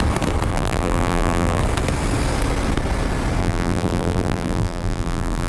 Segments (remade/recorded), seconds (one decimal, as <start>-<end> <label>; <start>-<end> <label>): 0.0-0.5 recorded; 0.5-1.6 remade; 1.6-3.4 recorded; 3.4-5.5 remade